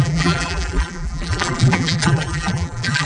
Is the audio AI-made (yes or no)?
yes